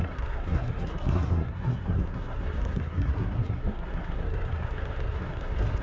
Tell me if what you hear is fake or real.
fake